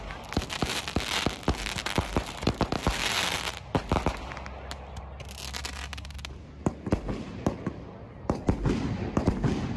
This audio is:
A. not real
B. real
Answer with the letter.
B